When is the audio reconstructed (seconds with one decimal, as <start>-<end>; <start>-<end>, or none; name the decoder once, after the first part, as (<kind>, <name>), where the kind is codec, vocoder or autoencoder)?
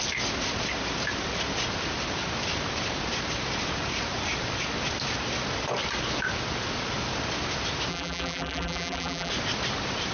7.9-9.3 (vocoder, BigVGAN v2)